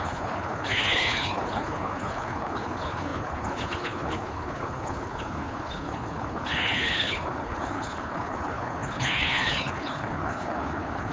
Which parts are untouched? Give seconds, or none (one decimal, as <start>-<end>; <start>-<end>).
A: none